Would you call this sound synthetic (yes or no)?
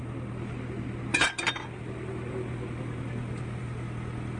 no